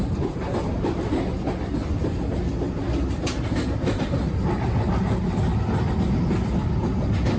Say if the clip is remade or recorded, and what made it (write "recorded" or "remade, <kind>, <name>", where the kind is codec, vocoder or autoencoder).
recorded